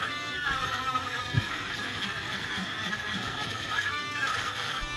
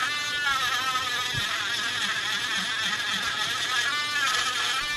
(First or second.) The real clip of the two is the second